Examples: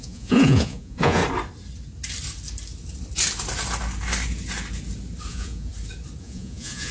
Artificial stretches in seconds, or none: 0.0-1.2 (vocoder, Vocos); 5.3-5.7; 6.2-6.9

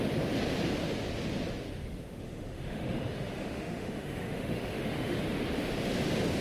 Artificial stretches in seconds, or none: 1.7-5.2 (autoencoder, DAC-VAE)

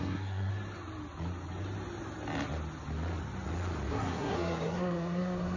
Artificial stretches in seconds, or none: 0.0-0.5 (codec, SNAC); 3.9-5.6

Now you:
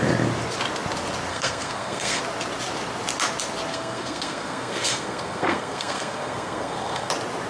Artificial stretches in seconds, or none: 1.3-2.2 (codec, SNAC); 3.7-7.1

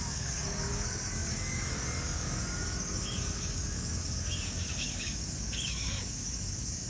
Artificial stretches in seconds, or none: 0.0-6.9 (codec, DAC)

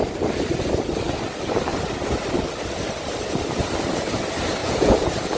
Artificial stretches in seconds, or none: 4.6-5.4 (vocoder, Vocos)

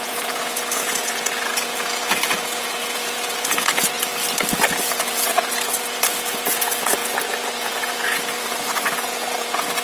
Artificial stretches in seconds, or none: 0.0-4.1 (vocoder, Vocos); 4.8-9.8

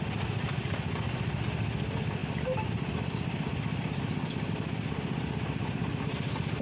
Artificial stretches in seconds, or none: none